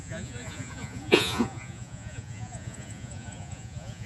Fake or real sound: fake